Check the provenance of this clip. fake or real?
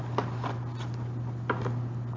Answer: real